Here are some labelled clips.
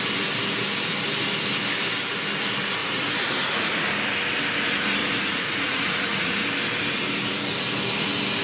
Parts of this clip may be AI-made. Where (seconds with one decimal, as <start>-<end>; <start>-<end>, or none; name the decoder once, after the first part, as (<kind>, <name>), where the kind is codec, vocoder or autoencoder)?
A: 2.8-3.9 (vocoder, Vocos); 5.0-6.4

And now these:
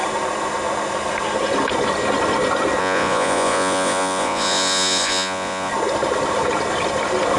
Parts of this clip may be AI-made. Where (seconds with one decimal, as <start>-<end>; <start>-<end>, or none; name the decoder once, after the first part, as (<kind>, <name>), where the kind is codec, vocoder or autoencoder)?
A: 2.8-5.7 (vocoder, Vocos)

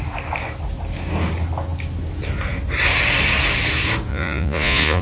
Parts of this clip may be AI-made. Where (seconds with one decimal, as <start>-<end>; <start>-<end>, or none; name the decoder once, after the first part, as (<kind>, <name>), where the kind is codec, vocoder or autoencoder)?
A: 4.1-5.0 (vocoder, Vocos)

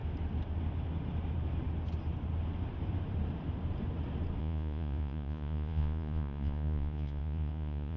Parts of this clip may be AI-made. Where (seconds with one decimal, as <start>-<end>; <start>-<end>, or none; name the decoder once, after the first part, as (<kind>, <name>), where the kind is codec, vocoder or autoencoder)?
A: 4.4-8.0 (vocoder, Vocos)

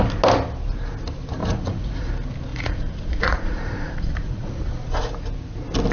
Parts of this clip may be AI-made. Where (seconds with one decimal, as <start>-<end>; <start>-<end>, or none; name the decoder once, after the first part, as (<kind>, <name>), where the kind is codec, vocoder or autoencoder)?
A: 1.4-2.1 (vocoder, Vocos); 2.5-5.1

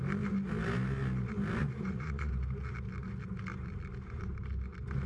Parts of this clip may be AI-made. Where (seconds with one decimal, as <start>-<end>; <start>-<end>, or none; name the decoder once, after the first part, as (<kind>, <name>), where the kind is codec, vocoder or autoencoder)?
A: 1.6-2.3 (vocoder, Vocos)

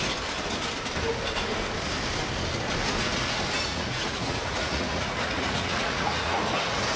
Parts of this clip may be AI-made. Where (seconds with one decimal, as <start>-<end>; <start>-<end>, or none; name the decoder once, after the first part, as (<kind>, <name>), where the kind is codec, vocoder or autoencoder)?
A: 3.7-6.4 (vocoder, Vocos)

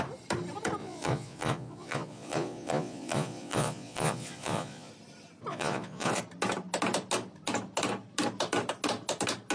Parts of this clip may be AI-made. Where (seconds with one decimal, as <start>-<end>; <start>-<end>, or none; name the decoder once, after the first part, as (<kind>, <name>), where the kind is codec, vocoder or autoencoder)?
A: 0.8-4.9 (vocoder, Vocos); 5.5-6.2